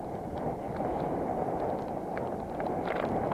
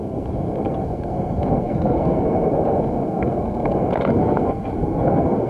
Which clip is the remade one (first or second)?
second